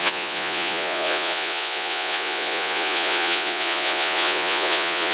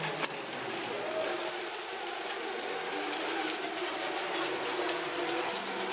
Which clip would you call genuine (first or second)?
second